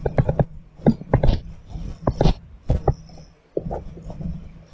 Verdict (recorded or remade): recorded